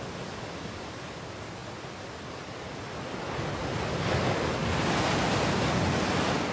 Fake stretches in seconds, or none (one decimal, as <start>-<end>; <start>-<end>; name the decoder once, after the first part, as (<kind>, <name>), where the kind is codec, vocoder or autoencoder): 4.6-5.3 (vocoder, BigVGAN v2)

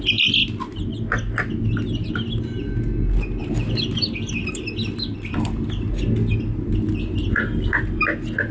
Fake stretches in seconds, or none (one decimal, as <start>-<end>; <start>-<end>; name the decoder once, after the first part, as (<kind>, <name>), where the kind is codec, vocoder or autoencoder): none

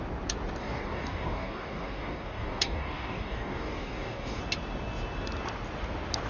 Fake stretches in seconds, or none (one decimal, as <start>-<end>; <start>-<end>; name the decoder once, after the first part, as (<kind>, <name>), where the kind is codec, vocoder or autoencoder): 0.6-4.4 (codec, DAC)

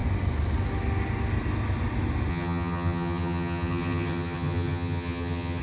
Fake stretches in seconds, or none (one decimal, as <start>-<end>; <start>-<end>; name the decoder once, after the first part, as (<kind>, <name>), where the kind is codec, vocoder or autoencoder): 2.3-5.6 (vocoder, HiFi-GAN)

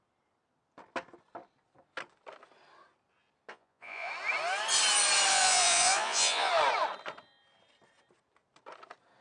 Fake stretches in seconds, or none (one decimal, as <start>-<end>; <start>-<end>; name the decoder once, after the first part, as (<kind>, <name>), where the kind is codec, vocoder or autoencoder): 3.5-4.1 (vocoder, Vocos); 5.3-6.5